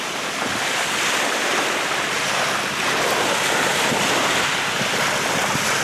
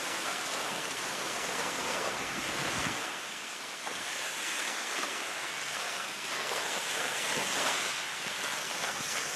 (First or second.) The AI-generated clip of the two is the second